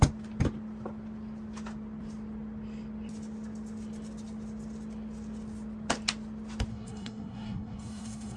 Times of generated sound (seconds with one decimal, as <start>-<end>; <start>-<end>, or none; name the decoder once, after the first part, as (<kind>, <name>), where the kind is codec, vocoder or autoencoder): 6.7-8.4 (codec, SNAC)